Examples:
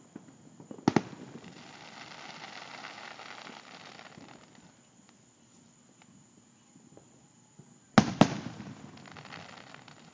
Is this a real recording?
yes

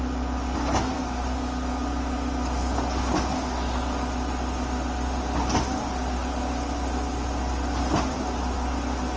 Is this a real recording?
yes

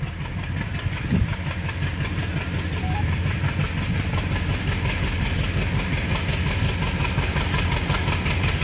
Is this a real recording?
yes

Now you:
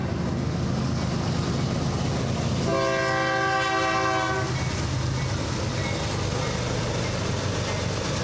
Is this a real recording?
yes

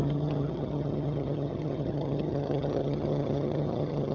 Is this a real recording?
no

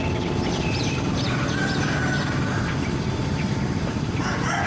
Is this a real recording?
yes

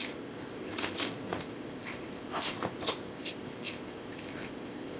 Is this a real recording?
no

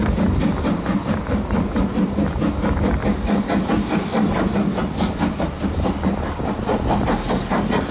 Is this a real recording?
yes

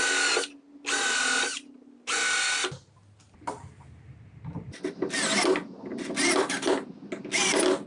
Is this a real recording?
yes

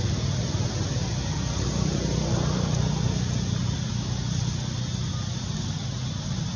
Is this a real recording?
yes